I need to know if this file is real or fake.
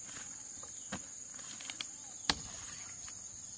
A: real